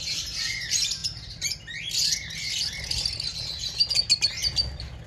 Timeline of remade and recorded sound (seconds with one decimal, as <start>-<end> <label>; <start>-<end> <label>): 0.0-5.1 recorded